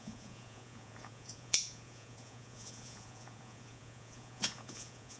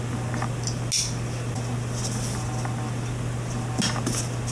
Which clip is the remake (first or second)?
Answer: first